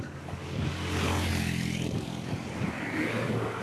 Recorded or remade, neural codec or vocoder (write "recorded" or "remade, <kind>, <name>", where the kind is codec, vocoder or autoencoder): remade, codec, DAC